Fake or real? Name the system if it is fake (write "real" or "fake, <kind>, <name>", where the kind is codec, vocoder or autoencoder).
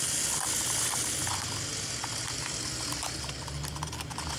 real